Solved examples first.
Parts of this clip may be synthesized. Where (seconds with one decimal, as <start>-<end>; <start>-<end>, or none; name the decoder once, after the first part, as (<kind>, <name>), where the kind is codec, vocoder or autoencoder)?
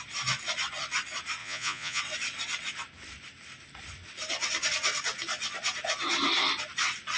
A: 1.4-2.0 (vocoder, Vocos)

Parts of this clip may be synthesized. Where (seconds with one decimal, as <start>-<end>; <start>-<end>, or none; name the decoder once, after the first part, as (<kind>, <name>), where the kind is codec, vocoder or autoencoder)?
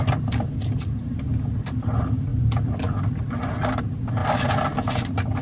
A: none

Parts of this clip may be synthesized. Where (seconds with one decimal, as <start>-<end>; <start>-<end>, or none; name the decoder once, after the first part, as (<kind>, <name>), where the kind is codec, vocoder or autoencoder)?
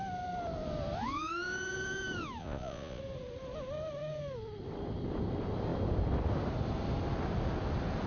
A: 2.4-3.0 (vocoder, Vocos)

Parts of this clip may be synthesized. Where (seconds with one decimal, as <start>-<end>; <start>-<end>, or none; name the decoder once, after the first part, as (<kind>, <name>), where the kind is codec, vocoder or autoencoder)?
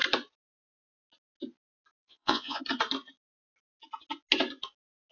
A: 2.0-2.6 (vocoder, Vocos)